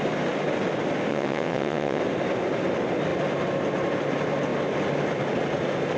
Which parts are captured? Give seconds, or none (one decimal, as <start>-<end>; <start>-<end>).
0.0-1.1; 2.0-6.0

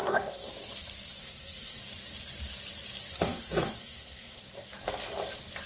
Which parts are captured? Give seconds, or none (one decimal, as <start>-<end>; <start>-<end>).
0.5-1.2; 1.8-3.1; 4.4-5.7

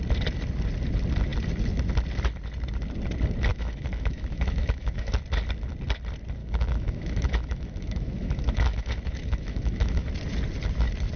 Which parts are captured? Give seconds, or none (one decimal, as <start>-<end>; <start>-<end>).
0.0-3.5; 5.2-6.4; 10.1-11.2

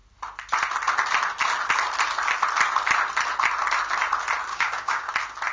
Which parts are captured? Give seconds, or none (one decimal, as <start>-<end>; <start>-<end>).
0.0-4.5; 5.1-5.5

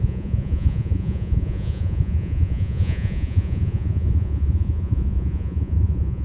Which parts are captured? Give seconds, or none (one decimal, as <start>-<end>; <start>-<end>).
none

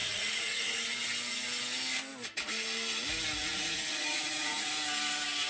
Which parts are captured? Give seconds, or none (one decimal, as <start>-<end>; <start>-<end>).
0.8-3.4; 4.7-5.5

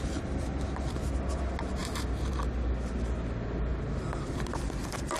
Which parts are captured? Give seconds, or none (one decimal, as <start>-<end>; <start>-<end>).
0.0-5.2